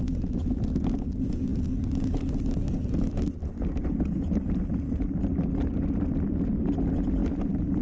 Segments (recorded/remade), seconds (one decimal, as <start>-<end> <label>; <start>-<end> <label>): 0.0-7.8 recorded